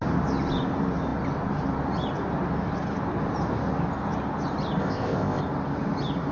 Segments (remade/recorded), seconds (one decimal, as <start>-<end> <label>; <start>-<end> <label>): 0.0-4.8 recorded; 4.8-5.4 remade; 5.4-6.3 recorded